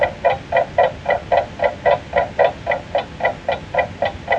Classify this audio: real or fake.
real